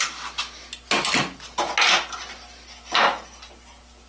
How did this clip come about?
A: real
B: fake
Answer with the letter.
A